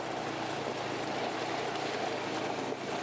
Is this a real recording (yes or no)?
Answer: yes